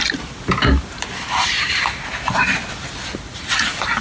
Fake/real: real